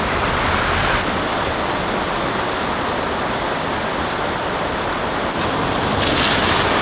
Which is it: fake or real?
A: real